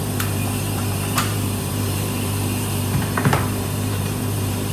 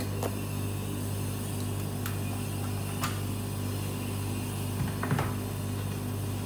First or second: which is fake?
first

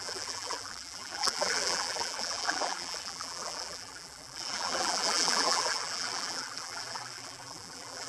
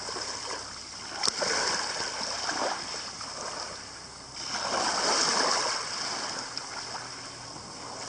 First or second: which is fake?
first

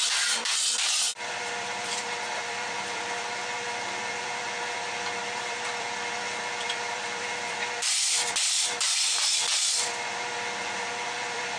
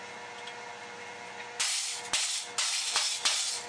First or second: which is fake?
first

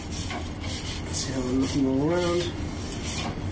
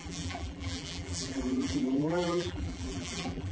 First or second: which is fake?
second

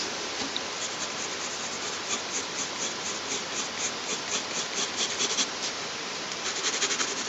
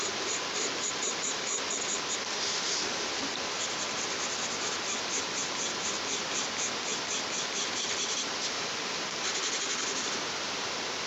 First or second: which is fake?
first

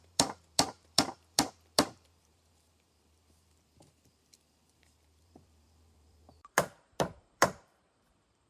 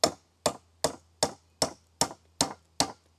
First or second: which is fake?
first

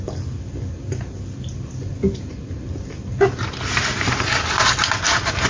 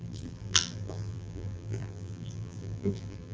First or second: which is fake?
second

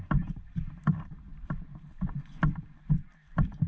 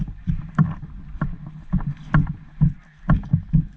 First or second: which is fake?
first